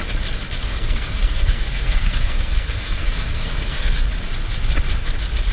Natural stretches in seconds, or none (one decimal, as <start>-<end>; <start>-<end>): 0.0-0.7; 3.9-5.5